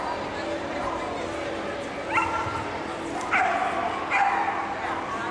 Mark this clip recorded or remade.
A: recorded